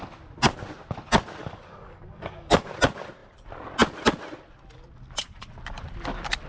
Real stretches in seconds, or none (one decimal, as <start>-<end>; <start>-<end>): 0.0-1.4; 2.6-6.5